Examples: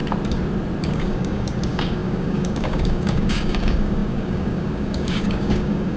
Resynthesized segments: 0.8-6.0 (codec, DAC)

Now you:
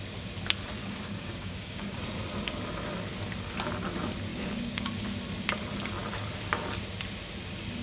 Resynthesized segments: 0.8-2.0 (codec, DAC); 4.3-4.9

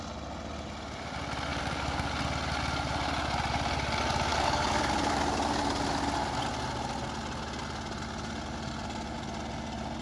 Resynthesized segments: 1.5-2.1 (codec, DAC); 4.3-4.9

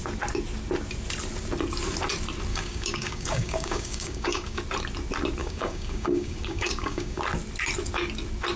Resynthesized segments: 2.5-4.6 (codec, DAC); 5.4-7.2

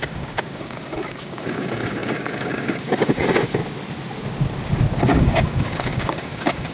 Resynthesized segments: 0.0-3.6 (codec, DAC); 5.1-6.7